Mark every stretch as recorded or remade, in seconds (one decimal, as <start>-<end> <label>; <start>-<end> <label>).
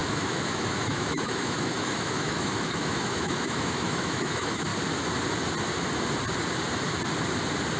0.0-4.7 remade; 4.7-7.8 recorded